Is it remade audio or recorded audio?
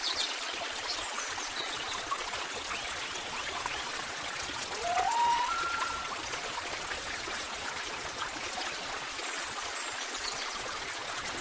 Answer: remade